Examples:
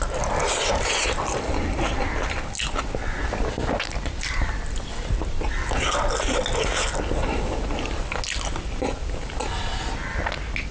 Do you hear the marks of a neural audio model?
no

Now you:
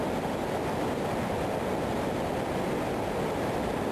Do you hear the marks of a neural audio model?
no